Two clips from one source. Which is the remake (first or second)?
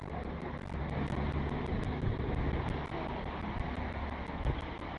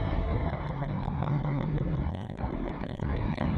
second